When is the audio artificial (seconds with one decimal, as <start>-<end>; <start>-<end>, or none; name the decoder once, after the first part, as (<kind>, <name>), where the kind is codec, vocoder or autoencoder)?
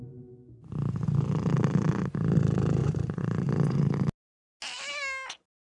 2.8-3.8 (vocoder, Vocos)